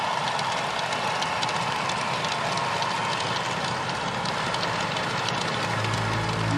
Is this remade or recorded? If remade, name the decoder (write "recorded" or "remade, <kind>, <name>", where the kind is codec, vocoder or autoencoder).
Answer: recorded